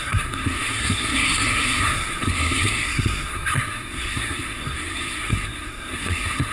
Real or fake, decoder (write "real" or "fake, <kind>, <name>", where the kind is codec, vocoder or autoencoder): fake, codec, SNAC